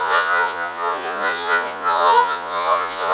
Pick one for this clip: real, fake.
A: fake